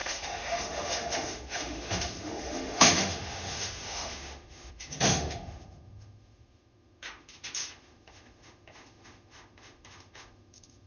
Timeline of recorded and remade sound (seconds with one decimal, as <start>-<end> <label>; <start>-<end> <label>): 0.0-10.9 remade